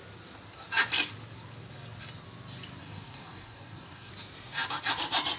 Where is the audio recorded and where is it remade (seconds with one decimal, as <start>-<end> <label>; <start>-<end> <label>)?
0.0-2.8 recorded; 2.8-4.1 remade; 4.1-5.4 recorded